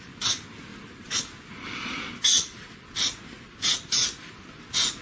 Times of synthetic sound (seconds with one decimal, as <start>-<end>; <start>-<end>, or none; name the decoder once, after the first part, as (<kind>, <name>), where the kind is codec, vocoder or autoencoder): none